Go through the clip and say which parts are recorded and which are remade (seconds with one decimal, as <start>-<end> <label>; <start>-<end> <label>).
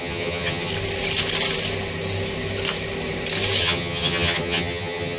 0.0-0.7 remade; 0.7-3.6 recorded; 3.6-5.2 remade